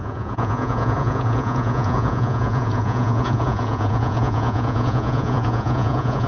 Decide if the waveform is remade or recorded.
remade